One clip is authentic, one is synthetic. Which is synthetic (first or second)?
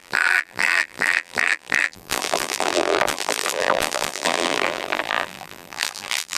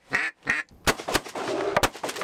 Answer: first